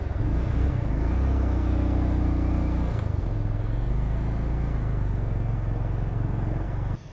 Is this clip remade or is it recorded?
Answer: remade